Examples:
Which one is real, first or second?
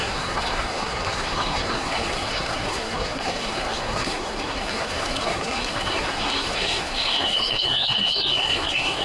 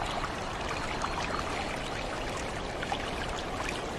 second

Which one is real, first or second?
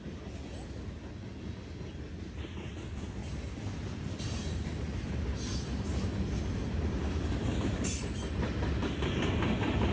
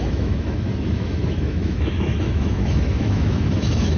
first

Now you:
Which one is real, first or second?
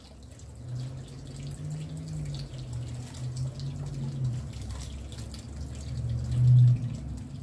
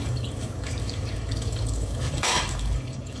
first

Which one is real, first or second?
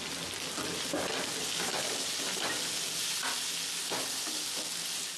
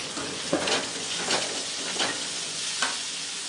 first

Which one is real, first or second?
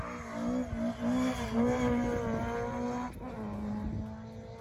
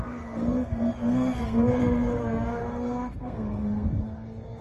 first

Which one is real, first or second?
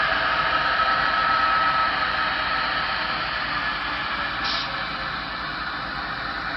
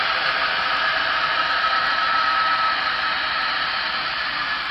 first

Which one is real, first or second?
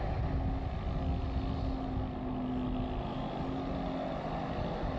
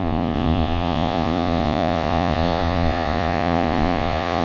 first